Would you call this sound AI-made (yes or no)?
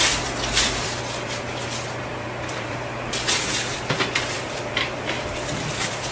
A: yes